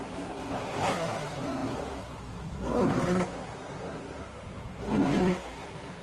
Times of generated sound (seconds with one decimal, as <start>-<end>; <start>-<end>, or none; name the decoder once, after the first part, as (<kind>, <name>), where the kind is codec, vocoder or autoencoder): 0.0-6.0 (codec, SNAC)